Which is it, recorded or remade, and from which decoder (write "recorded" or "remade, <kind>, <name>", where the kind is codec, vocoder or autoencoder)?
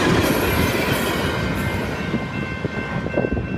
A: recorded